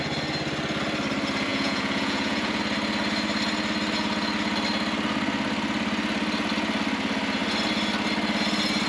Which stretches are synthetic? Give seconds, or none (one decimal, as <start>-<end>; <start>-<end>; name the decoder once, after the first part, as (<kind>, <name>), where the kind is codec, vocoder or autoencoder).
1.5-2.6 (vocoder, Vocos)